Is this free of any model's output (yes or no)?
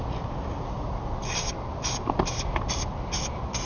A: yes